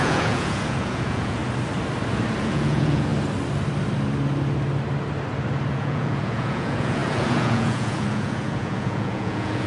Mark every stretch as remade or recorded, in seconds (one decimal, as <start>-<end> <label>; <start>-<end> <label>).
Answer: 0.0-1.4 remade; 1.4-2.4 recorded; 2.4-3.1 remade; 3.1-5.7 recorded; 5.7-9.7 remade